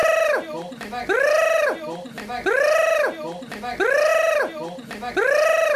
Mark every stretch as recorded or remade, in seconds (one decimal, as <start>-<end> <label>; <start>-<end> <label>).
0.0-5.8 recorded